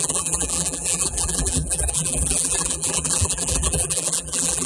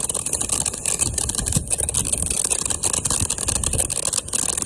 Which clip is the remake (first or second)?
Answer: first